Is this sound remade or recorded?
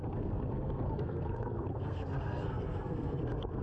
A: remade